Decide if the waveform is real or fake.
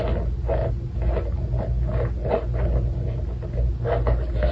real